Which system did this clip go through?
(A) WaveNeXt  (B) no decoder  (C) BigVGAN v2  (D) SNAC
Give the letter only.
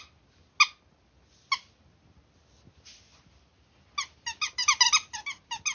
B